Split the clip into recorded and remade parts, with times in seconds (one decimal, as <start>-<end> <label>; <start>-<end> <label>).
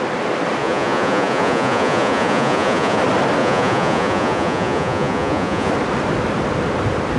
0.0-0.6 recorded; 0.6-3.0 remade; 3.0-3.4 recorded; 3.4-5.7 remade; 5.7-7.2 recorded